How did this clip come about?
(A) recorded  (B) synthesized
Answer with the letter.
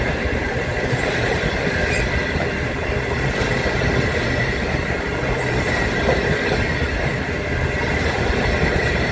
B